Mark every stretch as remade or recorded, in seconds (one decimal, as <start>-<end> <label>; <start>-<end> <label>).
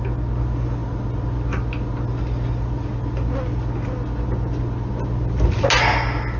0.0-6.4 recorded